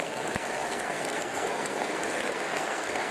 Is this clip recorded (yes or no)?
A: no